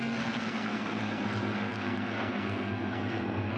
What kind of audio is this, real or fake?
fake